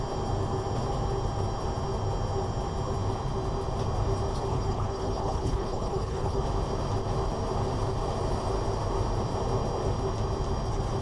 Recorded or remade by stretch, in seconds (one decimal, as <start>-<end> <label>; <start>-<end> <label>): 0.0-4.5 recorded; 4.5-6.4 remade; 6.4-11.0 recorded